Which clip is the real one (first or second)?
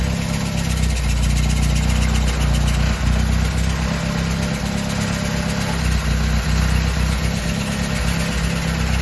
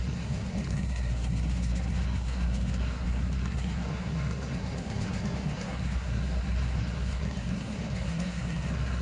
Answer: first